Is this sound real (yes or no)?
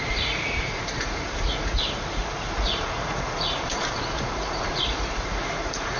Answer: no